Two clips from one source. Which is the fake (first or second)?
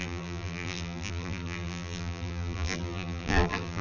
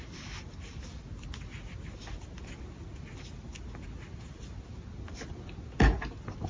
first